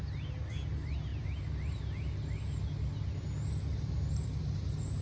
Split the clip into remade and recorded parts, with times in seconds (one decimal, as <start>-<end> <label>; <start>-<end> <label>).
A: 0.0-5.0 recorded

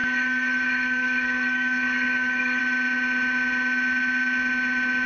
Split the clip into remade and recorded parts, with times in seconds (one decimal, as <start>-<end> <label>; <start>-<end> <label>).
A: 0.0-2.6 remade; 2.6-5.1 recorded

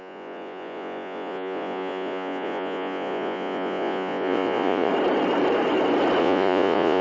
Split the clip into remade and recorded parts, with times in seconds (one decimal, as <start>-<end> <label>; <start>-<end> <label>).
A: 0.0-4.9 remade; 4.9-6.2 recorded; 6.2-7.0 remade